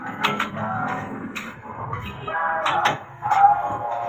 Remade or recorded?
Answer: remade